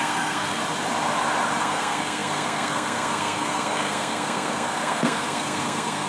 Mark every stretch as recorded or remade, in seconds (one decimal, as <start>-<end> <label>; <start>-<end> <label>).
0.0-0.6 remade; 0.6-1.6 recorded; 1.6-6.1 remade